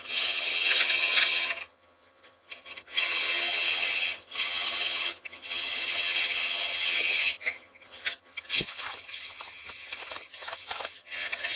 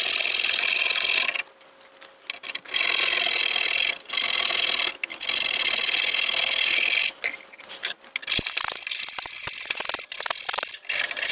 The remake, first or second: first